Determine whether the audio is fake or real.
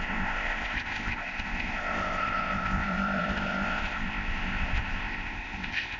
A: fake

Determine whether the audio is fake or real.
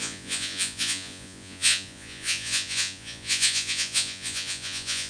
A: fake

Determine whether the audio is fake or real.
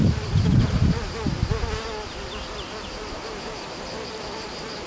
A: real